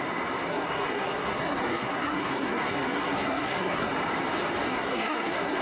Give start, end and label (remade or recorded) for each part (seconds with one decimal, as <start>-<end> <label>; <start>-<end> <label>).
0.0-0.5 recorded; 0.5-3.9 remade; 3.9-4.7 recorded; 4.7-5.6 remade